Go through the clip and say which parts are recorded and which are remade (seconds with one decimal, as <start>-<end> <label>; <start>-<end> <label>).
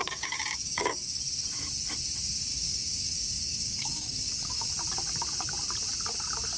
0.0-1.2 remade; 1.2-2.5 recorded; 2.5-4.7 remade; 4.7-6.6 recorded